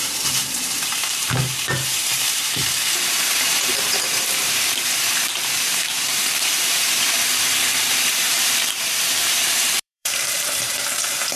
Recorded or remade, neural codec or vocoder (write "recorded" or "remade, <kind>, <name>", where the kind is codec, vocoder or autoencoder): remade, vocoder, BigVGAN v2